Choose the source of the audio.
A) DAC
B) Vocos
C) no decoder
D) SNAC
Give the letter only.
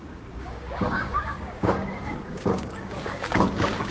A